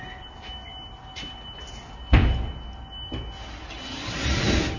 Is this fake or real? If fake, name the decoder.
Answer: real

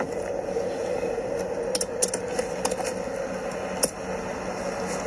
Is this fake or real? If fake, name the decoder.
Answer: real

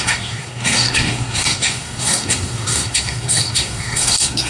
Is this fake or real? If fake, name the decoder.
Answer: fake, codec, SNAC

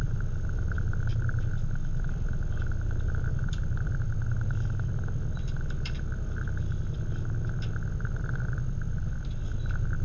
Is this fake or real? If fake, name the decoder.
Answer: fake, vocoder, BigVGAN v2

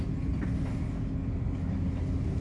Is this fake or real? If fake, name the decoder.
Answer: real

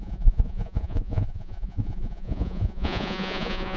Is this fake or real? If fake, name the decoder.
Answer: fake, vocoder, Vocos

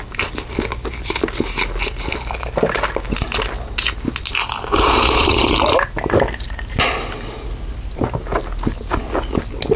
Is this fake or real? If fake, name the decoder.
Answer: real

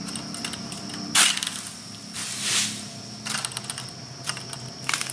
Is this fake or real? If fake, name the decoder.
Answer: real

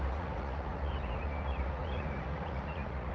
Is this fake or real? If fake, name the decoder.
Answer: fake, vocoder, Vocos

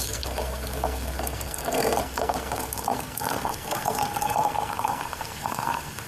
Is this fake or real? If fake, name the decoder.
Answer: fake, codec, SNAC